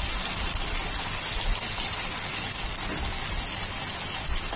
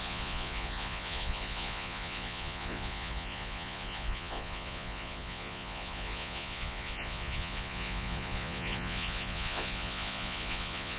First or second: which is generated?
second